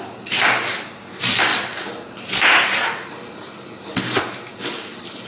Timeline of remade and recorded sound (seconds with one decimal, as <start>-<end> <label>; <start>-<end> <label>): 0.0-5.3 recorded